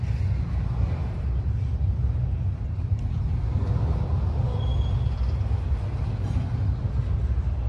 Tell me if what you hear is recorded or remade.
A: recorded